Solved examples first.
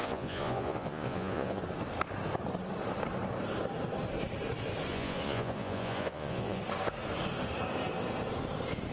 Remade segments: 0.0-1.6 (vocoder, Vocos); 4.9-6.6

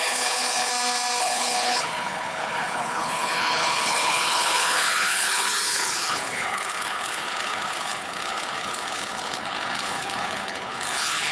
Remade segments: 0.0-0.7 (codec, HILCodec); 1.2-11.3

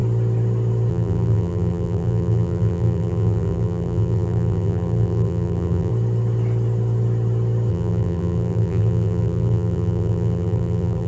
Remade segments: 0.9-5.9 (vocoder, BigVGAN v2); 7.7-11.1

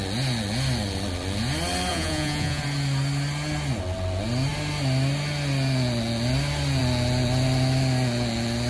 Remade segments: 1.9-2.6 (vocoder, Vocos)